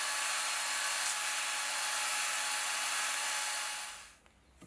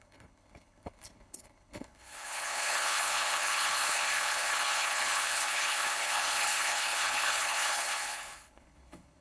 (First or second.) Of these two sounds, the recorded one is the first